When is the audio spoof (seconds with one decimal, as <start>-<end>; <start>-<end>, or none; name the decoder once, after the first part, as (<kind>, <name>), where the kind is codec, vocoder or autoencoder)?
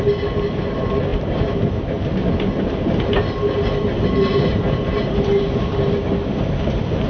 1.1-5.4 (vocoder, BigVGAN v2)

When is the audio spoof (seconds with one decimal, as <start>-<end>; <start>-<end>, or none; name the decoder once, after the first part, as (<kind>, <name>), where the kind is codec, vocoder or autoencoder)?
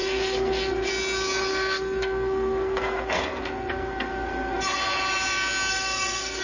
0.0-0.9 (codec, SNAC); 1.5-4.6; 5.7-6.4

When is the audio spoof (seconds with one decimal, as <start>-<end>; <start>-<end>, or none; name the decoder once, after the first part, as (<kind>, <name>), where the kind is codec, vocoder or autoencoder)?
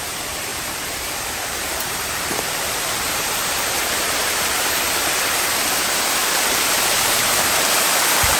0.0-8.4 (vocoder, BigVGAN v2)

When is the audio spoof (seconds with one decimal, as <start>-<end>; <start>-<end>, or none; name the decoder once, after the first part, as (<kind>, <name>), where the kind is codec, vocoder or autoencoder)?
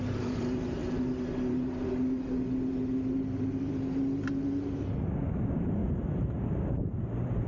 0.0-0.8 (vocoder, BigVGAN v2); 5.3-5.8; 6.5-7.5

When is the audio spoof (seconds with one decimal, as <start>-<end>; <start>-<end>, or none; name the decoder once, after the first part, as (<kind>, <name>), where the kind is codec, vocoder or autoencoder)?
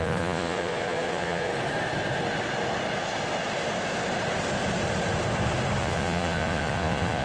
0.0-1.5 (vocoder, Vocos); 5.8-7.2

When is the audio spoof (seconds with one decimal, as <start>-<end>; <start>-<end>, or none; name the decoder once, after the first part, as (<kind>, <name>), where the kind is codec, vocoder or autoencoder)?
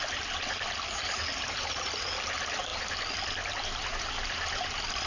none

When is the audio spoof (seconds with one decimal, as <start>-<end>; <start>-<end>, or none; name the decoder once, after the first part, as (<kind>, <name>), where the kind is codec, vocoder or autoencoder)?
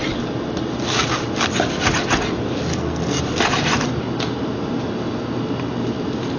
2.7-3.2 (codec, SNAC)